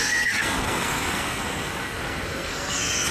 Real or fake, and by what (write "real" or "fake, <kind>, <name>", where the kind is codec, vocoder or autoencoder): fake, codec, SNAC